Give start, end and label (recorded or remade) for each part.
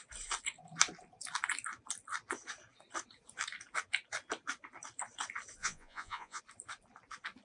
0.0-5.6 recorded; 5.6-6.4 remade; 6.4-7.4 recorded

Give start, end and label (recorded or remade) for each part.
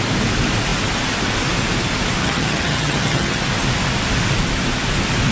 0.0-2.2 recorded; 2.2-3.4 remade; 3.4-5.3 recorded